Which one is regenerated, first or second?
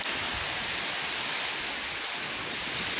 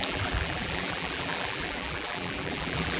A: second